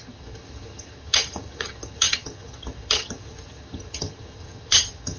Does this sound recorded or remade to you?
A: remade